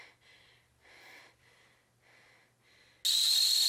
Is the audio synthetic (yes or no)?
no